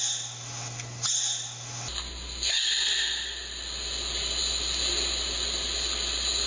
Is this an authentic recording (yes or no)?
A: yes